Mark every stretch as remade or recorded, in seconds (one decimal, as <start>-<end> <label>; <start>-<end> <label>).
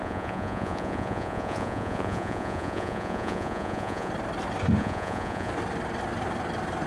0.0-4.1 remade; 4.1-4.8 recorded; 4.8-5.5 remade; 5.5-6.9 recorded